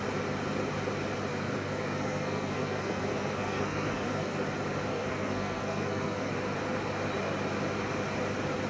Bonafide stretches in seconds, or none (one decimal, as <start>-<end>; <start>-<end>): 0.0-1.3; 4.4-4.9; 6.3-8.7